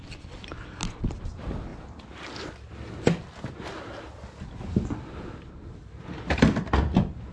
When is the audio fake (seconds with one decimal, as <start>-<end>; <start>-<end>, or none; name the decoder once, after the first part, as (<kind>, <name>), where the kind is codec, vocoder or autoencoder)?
none